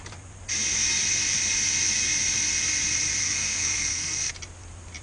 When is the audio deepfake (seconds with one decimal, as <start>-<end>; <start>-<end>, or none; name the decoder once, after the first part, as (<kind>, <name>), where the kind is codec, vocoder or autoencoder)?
3.2-4.3 (codec, SNAC)